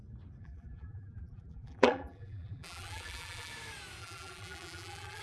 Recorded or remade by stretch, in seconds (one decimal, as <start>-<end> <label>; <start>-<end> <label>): 0.0-0.4 recorded; 0.4-3.5 remade; 3.5-4.0 recorded; 4.0-5.2 remade